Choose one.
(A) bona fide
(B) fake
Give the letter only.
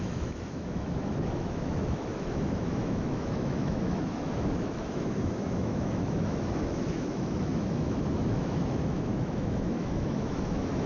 B